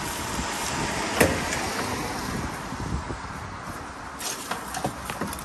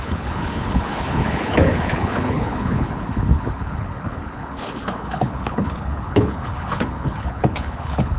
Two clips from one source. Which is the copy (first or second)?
second